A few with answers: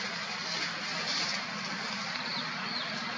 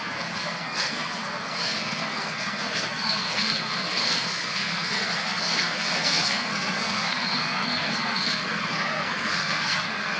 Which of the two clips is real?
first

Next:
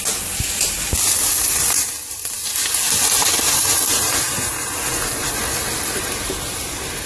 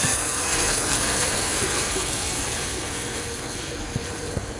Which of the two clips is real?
first